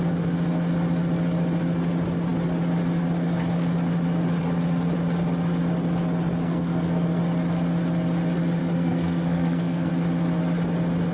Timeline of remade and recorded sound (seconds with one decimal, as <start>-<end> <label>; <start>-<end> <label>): 0.0-6.4 recorded; 6.4-7.2 remade; 7.2-8.6 recorded; 8.6-9.9 remade; 9.9-11.1 recorded